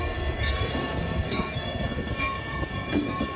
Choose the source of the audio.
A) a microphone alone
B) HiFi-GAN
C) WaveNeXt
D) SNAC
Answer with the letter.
D